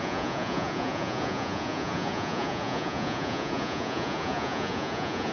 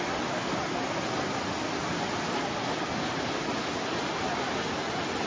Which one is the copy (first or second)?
first